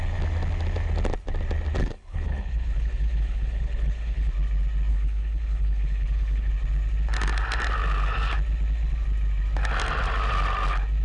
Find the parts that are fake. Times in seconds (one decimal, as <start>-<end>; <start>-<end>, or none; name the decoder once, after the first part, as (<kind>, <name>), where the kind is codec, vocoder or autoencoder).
1.8-4.3 (codec, HILCodec); 4.9-6.5

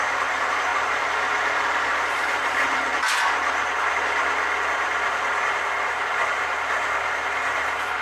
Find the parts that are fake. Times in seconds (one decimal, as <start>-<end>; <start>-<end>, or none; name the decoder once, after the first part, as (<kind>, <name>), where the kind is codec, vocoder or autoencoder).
0.0-0.7 (vocoder, BigVGAN v2); 2.1-2.9

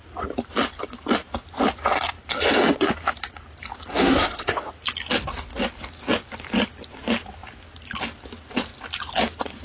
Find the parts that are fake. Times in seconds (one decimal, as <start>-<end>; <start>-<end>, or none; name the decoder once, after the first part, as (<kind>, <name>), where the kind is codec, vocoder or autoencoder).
3.9-4.7 (codec, SNAC)

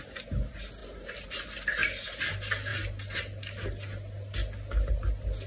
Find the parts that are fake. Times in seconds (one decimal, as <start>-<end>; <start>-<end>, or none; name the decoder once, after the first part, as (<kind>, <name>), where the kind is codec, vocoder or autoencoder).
none

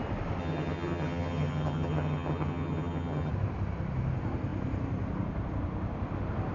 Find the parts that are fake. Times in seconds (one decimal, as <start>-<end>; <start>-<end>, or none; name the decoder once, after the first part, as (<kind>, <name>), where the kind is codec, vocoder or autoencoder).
0.4-3.3 (vocoder, HiFi-GAN)

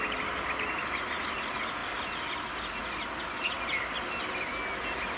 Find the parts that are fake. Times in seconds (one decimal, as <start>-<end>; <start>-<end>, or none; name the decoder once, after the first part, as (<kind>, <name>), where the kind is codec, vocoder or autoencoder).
none

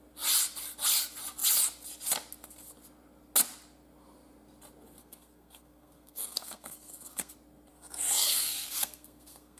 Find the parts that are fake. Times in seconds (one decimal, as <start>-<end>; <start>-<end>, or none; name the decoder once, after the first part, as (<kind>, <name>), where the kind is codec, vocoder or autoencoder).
5.0-7.3 (codec, SNAC); 7.7-9.6

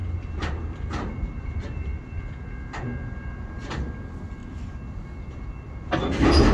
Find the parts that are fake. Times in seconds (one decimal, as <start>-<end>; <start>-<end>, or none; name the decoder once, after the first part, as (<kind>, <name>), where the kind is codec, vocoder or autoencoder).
0.0-2.2 (vocoder, BigVGAN v2); 4.4-5.7